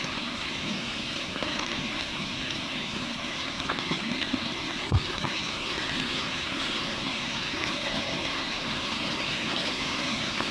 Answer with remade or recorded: remade